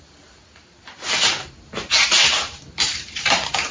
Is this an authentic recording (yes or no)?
no